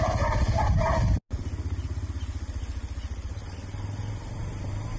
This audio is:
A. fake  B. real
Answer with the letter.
B